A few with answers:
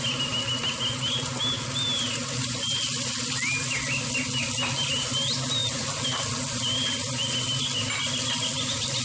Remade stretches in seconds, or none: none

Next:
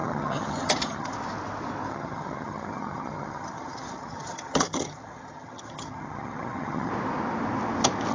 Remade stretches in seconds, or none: 0.0-1.1; 1.9-6.9

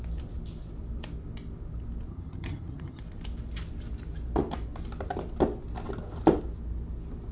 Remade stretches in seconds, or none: 2.1-3.0

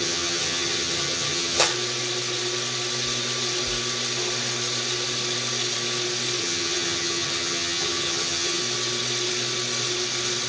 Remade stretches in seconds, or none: 0.0-1.7; 6.4-8.6

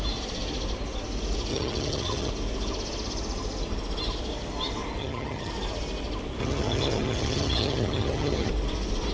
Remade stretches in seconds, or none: 1.5-2.3; 5.0-5.5; 6.4-8.5

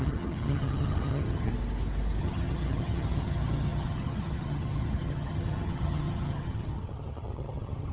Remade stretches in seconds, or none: 0.0-1.5; 2.2-7.9